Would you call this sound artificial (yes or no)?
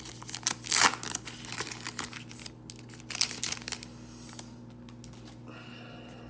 no